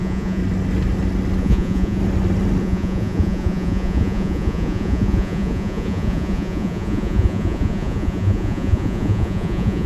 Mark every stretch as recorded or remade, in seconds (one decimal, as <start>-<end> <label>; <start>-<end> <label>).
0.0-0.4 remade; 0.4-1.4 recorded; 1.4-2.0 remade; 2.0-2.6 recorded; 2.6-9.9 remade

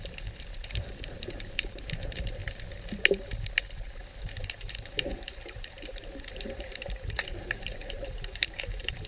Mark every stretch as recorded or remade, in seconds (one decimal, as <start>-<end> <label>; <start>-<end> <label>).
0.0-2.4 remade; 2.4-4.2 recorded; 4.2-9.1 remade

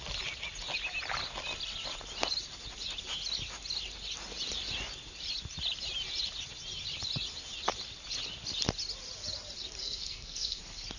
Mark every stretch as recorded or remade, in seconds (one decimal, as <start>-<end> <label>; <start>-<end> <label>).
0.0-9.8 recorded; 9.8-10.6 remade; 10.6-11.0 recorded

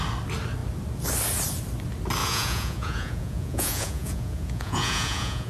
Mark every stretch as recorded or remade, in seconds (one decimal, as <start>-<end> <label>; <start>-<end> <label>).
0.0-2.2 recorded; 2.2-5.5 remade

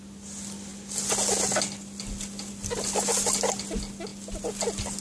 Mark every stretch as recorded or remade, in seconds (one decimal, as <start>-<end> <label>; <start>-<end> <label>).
0.0-5.0 recorded

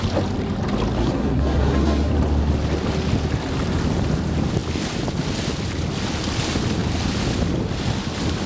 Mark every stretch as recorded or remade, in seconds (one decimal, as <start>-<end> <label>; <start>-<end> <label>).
0.0-1.0 recorded; 1.0-2.1 remade; 2.1-8.5 recorded

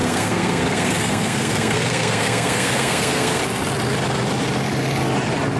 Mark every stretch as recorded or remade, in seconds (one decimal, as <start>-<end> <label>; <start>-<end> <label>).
0.0-3.4 remade; 3.4-5.6 recorded